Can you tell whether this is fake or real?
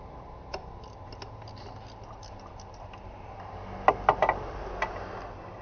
real